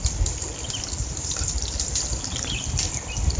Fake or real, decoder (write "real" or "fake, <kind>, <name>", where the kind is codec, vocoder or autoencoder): real